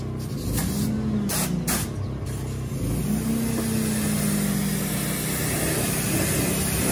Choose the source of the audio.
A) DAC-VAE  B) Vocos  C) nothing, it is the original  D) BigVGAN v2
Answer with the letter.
C